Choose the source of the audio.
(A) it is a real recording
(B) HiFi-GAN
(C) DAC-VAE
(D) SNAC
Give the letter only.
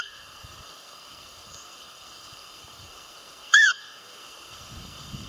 D